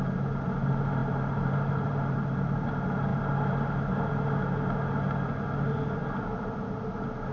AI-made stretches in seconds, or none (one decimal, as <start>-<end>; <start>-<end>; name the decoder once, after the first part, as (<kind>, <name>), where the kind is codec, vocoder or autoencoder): 1.0-2.7 (vocoder, BigVGAN v2)